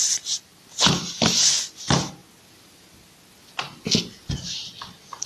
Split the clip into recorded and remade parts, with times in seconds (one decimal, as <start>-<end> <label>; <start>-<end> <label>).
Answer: 0.0-5.3 recorded